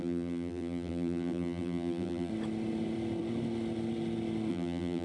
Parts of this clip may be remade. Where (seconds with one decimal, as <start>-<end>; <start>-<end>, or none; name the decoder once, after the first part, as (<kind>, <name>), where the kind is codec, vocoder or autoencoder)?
0.0-2.3 (vocoder, BigVGAN v2); 4.5-5.0